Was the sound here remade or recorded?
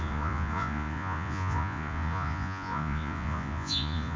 remade